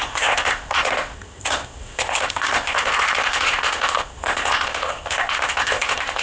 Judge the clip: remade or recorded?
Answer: remade